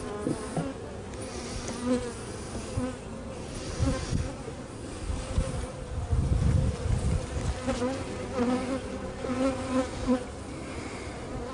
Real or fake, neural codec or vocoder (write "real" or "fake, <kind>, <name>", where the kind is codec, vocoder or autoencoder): real